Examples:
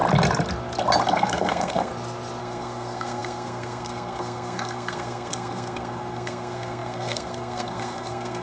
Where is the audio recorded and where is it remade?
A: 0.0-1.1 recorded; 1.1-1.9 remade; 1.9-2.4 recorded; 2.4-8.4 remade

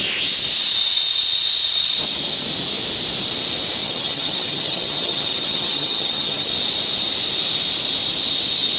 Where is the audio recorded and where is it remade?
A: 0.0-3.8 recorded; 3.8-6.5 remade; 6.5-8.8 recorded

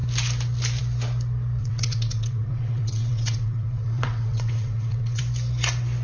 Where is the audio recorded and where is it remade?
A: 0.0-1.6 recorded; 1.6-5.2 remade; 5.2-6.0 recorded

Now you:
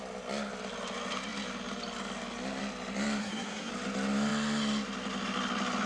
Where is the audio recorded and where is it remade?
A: 0.0-3.2 recorded; 3.2-3.7 remade; 3.7-5.9 recorded